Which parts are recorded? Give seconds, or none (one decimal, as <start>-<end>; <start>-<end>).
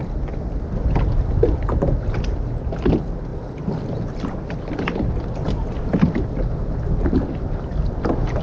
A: 0.0-8.4